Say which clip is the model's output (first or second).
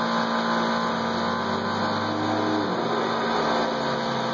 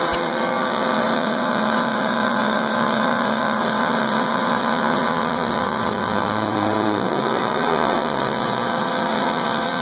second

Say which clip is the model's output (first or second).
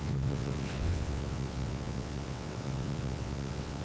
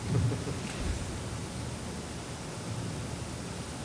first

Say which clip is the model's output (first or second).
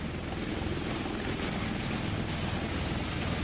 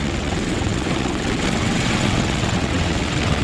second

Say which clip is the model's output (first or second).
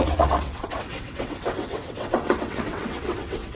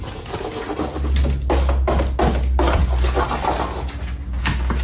first